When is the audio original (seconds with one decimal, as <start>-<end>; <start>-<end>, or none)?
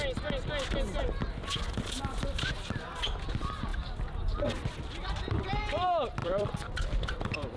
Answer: 0.0-6.2; 7.1-7.6